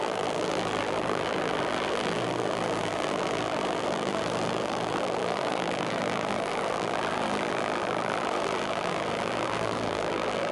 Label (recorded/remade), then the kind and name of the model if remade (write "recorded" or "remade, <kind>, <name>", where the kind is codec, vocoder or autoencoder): remade, vocoder, BigVGAN v2